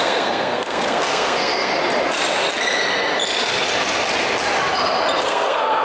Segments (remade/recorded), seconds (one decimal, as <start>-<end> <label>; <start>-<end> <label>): 0.0-1.7 remade; 1.7-5.2 recorded; 5.2-5.8 remade